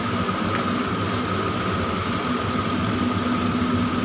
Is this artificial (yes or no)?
no